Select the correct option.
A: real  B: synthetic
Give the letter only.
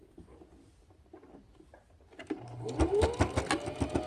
A